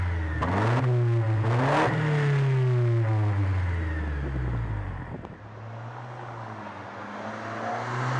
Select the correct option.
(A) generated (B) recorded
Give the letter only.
B